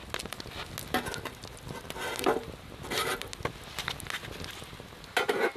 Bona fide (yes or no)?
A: yes